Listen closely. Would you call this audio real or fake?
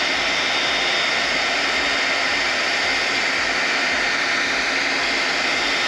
real